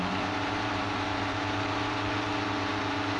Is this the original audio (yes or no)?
no